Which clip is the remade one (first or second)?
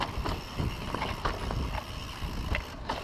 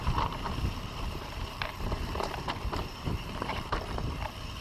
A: second